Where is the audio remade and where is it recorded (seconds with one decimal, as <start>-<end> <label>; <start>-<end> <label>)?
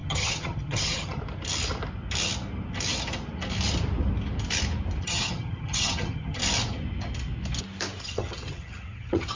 0.0-1.2 remade; 1.2-5.0 recorded; 5.0-6.4 remade; 6.4-8.0 recorded; 8.0-9.4 remade